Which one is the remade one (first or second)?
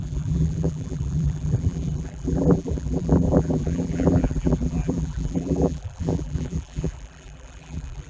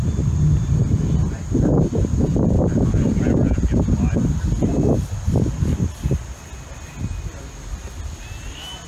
first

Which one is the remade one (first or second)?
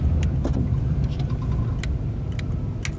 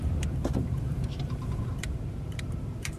second